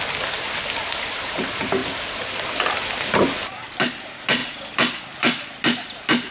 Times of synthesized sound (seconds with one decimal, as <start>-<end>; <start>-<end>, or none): none